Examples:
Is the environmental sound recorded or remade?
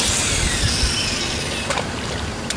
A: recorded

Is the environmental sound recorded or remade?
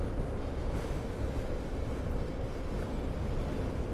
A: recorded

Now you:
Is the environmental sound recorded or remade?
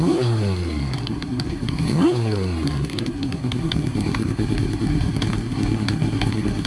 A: remade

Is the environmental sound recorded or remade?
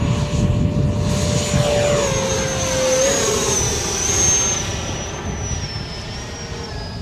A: recorded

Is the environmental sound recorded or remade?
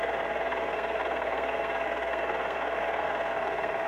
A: remade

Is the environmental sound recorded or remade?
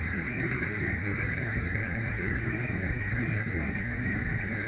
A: remade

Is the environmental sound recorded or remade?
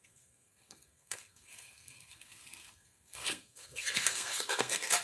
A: remade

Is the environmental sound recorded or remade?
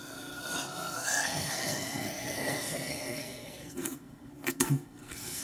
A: remade